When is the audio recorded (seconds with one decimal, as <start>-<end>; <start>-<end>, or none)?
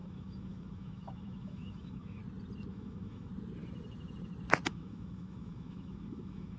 2.2-2.7; 3.3-4.7